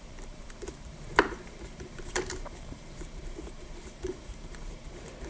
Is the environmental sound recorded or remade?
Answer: remade